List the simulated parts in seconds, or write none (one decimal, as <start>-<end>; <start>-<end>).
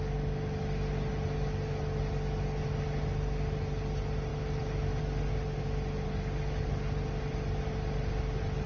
none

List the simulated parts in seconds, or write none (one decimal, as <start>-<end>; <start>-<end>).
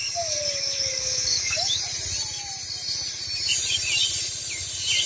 0.0-1.8